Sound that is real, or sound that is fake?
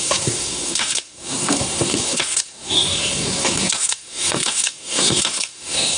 fake